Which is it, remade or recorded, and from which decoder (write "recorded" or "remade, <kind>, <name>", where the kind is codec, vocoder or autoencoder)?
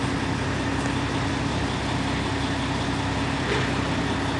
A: recorded